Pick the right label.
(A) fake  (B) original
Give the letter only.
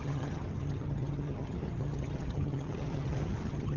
A